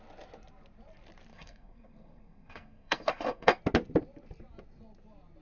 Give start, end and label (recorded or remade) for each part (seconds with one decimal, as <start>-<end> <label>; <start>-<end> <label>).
0.0-1.3 recorded; 1.3-3.6 remade; 3.6-5.4 recorded